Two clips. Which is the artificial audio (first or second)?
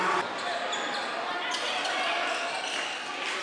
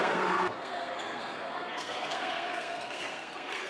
second